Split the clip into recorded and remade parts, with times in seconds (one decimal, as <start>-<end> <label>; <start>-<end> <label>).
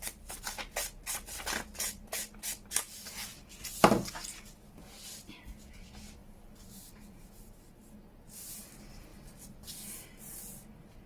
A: 0.0-6.2 recorded; 6.2-7.3 remade; 7.3-11.1 recorded